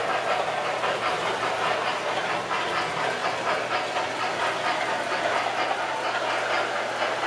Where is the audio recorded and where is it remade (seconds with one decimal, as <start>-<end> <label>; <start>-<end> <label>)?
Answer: 0.0-7.3 recorded